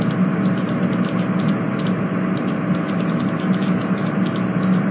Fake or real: real